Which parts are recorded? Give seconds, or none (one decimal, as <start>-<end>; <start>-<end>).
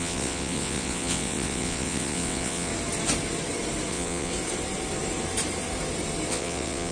2.7-3.9; 4.3-6.3